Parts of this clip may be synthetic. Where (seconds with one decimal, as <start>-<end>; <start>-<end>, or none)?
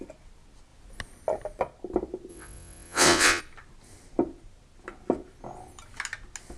2.3-3.4